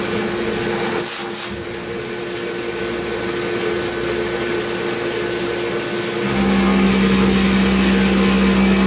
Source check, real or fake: real